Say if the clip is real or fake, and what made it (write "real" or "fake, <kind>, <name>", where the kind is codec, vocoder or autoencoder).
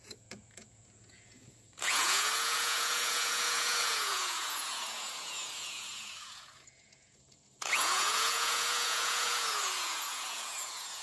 fake, vocoder, Vocos